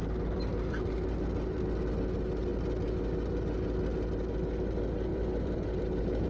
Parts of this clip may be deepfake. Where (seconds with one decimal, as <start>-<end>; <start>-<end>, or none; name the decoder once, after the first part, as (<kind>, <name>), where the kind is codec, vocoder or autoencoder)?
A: 0.0-1.6 (vocoder, BigVGAN v2); 5.1-5.8